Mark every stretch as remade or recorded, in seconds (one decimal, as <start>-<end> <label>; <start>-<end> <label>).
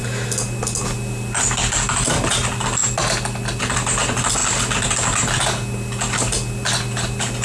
0.0-7.4 recorded